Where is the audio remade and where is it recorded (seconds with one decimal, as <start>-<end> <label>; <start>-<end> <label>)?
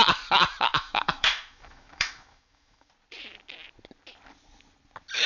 0.0-0.7 recorded; 0.7-2.9 remade; 2.9-5.3 recorded